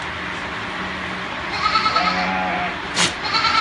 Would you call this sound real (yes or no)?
yes